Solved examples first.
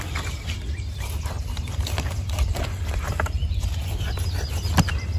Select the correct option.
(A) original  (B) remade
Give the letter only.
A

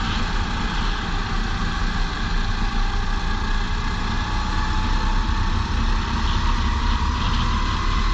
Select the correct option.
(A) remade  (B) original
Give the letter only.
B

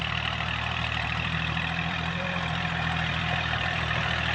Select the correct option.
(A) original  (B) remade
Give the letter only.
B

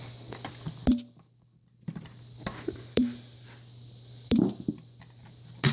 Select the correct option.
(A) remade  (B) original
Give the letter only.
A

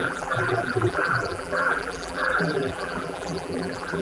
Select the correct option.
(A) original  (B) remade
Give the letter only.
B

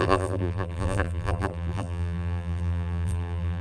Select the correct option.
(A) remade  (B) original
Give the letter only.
A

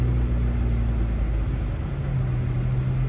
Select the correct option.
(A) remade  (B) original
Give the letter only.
B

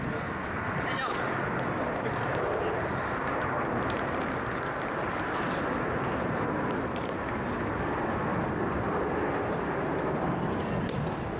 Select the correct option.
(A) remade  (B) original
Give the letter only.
B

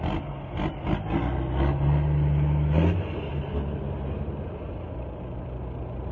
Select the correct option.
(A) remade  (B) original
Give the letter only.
B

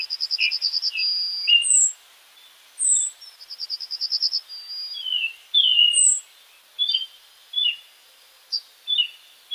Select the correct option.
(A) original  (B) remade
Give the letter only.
A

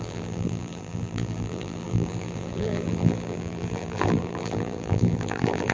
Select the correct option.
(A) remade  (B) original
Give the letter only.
A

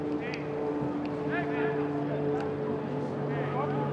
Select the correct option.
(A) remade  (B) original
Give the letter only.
B